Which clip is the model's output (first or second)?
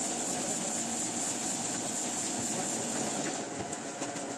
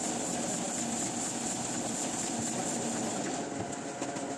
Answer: first